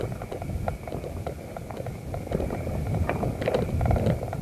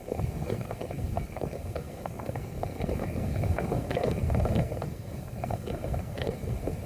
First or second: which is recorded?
first